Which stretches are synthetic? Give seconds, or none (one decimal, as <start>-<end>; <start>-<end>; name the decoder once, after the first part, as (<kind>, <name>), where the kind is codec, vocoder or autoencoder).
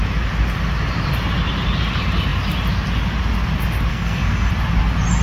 3.9-4.5 (codec, SNAC)